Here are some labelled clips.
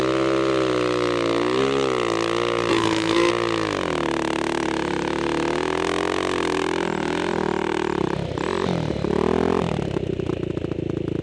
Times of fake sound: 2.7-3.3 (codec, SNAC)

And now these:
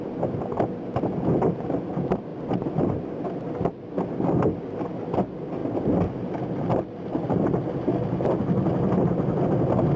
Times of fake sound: none

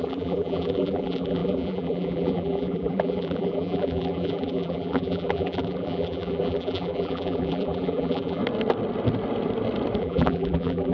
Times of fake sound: 0.0-8.4 (vocoder, BigVGAN v2); 10.0-10.9

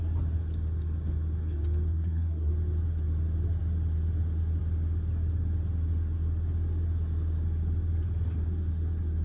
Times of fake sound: 1.9-2.5 (codec, SNAC)